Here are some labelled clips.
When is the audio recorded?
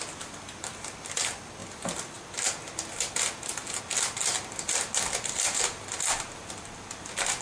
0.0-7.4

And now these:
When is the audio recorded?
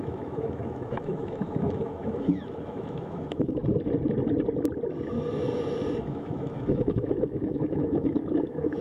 3.6-6.0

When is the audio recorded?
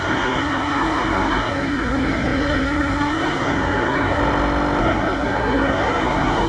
4.2-4.8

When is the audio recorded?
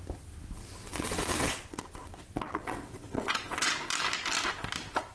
0.0-0.6; 3.7-5.1